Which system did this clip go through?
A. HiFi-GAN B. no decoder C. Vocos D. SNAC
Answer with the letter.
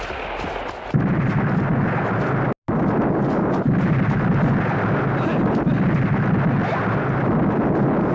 B